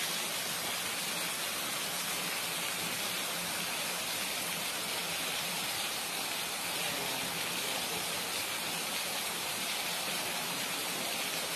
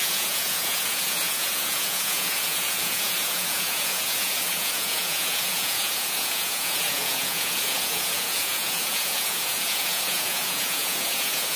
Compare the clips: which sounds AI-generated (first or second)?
second